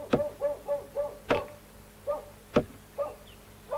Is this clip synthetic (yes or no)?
no